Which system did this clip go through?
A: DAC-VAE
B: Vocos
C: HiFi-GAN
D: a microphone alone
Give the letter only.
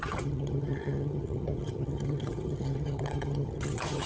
C